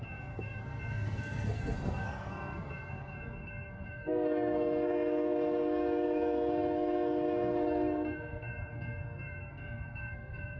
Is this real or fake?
fake